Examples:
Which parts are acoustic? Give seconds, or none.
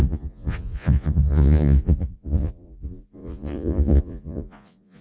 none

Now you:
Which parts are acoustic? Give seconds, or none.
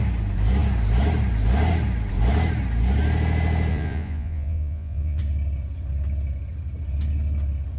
0.0-3.7; 5.2-7.8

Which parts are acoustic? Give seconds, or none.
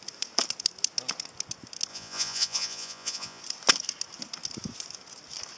0.0-1.9; 3.4-5.6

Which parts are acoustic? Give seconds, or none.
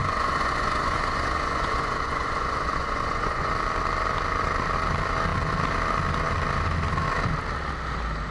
3.5-8.3